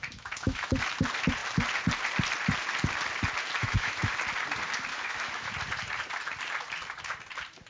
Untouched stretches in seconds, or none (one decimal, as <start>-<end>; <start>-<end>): 0.7-3.6; 4.1-4.9; 5.5-7.7